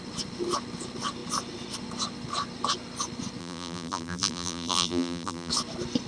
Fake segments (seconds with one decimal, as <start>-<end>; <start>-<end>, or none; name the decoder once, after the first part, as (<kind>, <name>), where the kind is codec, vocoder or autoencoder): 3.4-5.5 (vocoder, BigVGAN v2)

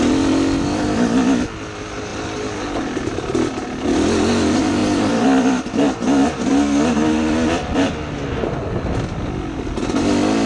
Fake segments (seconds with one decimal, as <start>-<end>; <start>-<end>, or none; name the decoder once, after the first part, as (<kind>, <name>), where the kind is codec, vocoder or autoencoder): 4.8-6.9 (vocoder, BigVGAN v2)

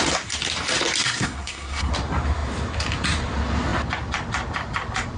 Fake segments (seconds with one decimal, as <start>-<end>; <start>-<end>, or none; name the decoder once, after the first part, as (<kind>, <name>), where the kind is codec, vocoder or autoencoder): 1.0-1.9 (codec, SNAC)

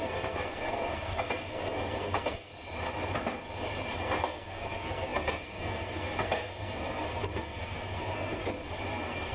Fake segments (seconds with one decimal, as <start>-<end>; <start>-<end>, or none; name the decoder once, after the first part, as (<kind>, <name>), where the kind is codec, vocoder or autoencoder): 0.0-2.5 (codec, SNAC); 4.0-8.4; 8.9-9.3

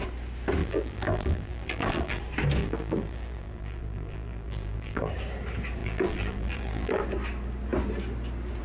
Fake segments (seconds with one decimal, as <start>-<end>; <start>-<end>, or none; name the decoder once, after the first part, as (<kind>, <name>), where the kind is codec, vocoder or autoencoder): 0.6-2.2 (vocoder, BigVGAN v2); 2.6-5.1; 5.8-7.0